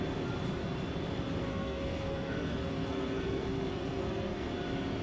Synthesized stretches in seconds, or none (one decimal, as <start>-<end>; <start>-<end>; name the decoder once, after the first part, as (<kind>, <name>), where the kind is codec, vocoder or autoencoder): 1.5-4.5 (codec, SNAC)